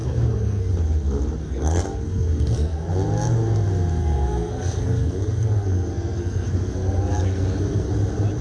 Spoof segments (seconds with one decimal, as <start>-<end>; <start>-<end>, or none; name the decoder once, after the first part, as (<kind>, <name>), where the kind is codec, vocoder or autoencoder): 0.0-0.7 (codec, SNAC); 1.4-2.9; 4.0-7.9